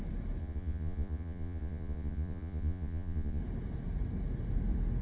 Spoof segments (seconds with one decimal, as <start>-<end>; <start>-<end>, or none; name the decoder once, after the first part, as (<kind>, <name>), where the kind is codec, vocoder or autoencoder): 0.4-3.4 (vocoder, Vocos)